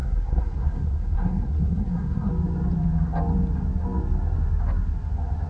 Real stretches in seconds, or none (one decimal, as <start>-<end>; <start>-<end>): 2.3-5.5